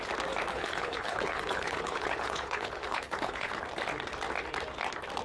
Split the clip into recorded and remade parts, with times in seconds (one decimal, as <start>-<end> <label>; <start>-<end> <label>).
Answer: 0.0-0.5 recorded; 0.5-3.5 remade; 3.5-5.2 recorded